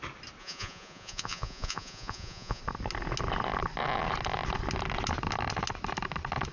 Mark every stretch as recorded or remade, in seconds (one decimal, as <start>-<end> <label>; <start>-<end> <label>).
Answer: 0.0-0.4 recorded; 0.4-2.6 remade; 2.6-6.5 recorded